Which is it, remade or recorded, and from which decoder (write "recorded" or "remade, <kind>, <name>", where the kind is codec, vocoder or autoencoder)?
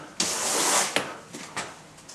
recorded